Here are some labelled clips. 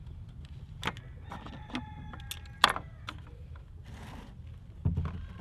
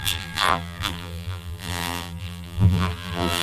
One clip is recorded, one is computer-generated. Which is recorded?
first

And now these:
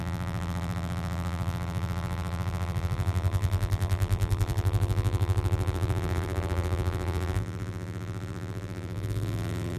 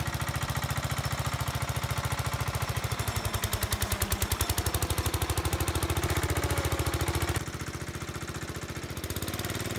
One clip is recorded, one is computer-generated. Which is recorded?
second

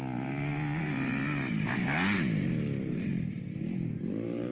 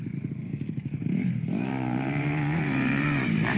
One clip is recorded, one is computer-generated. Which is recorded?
first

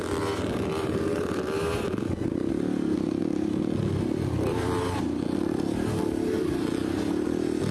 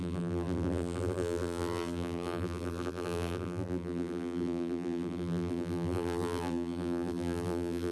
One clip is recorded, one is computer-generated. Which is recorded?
first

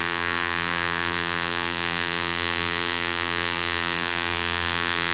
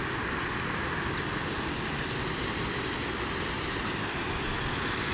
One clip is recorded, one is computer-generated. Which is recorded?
second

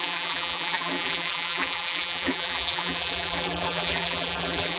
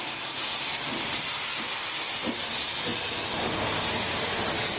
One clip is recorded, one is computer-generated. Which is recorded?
second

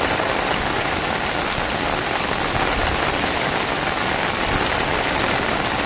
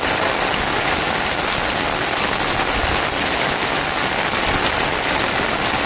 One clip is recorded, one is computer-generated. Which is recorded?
second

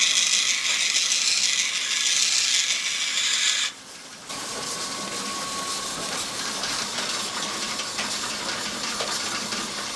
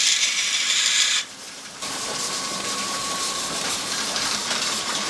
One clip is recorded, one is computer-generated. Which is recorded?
first